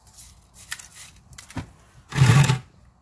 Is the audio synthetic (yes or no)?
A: no